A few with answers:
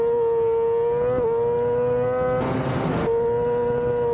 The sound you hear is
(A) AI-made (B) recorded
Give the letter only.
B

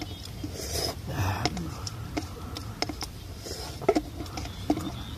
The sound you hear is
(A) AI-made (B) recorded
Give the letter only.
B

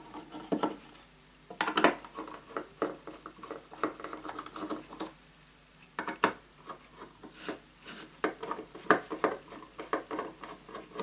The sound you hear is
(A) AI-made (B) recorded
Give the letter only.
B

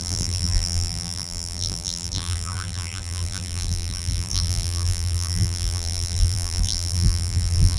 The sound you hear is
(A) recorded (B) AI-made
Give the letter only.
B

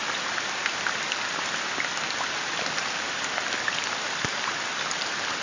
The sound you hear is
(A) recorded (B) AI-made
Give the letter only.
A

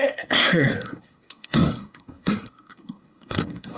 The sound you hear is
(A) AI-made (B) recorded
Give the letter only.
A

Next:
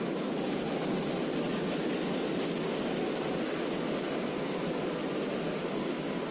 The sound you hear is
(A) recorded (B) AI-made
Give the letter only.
A